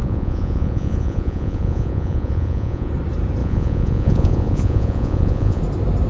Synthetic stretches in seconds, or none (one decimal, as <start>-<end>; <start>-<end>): 0.0-2.9; 3.4-5.6